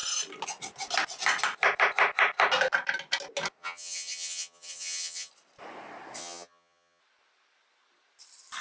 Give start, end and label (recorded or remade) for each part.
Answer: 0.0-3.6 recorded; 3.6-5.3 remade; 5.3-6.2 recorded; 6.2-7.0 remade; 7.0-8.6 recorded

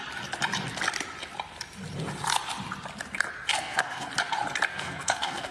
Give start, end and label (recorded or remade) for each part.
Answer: 0.0-3.5 recorded; 3.5-4.1 remade; 4.1-4.7 recorded; 4.7-5.5 remade

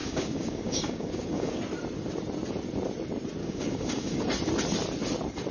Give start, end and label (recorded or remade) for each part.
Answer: 0.0-1.6 remade; 1.6-3.4 recorded; 3.4-4.2 remade; 4.2-5.5 recorded

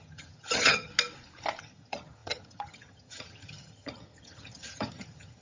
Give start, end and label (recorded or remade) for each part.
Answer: 0.0-0.9 remade; 0.9-1.6 recorded; 1.6-5.4 remade